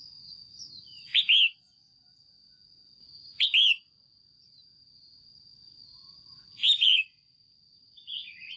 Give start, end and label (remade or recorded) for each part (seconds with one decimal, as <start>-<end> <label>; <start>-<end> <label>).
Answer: 0.0-5.5 recorded; 5.5-7.7 remade; 7.7-8.6 recorded